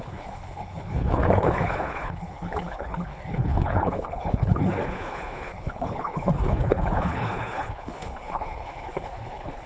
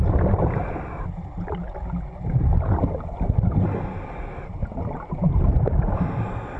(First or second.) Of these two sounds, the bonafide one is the second